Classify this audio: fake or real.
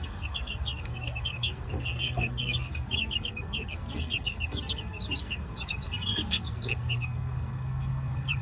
fake